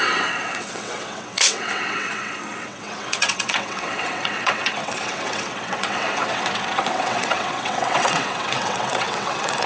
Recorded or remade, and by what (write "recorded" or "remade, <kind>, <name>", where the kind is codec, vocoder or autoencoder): remade, vocoder, WaveNeXt